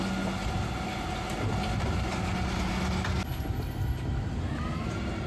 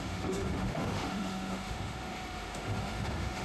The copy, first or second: second